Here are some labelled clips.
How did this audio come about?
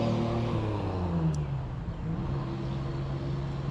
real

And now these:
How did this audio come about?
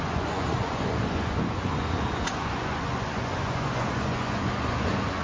fake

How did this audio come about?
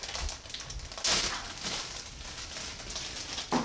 real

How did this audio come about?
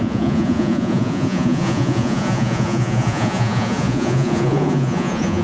fake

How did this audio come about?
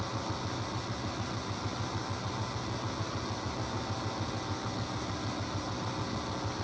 real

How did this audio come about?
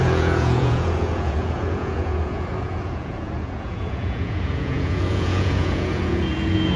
fake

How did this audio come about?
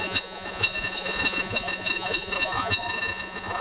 fake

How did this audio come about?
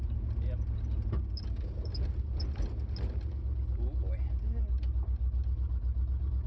real